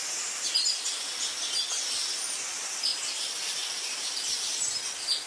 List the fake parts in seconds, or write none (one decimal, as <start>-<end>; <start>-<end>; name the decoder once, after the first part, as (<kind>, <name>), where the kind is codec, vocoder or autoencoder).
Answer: none

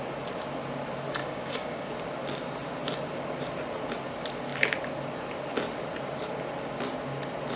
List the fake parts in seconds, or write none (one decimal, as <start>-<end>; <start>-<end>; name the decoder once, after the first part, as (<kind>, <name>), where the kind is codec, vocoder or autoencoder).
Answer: 1.2-1.9 (codec, DAC)

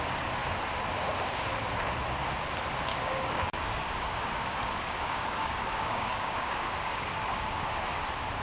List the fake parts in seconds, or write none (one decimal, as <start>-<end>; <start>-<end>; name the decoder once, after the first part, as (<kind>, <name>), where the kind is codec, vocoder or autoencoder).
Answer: 2.9-7.5 (codec, DAC)

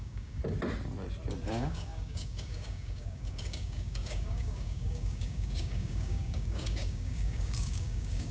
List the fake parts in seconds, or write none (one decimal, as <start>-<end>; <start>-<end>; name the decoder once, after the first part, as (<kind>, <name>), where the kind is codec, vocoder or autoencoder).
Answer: 0.0-0.4 (codec, DAC); 1.5-8.3

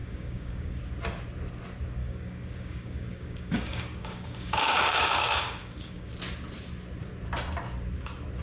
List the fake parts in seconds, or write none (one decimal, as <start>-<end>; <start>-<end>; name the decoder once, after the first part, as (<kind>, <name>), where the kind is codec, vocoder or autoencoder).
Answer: 0.0-0.8 (codec, DAC); 2.0-6.1

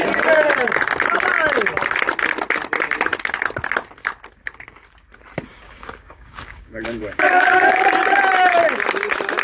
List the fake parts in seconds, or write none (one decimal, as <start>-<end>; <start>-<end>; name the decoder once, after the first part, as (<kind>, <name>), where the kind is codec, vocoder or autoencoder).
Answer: 5.5-7.9 (codec, DAC)